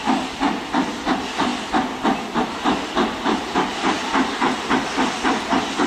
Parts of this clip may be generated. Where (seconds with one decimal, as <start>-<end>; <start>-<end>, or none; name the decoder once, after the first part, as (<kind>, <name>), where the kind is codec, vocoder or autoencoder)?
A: none